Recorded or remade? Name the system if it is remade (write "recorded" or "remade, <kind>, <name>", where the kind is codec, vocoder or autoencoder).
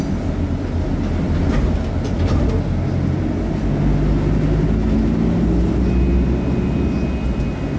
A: recorded